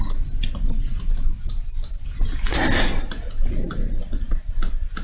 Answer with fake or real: real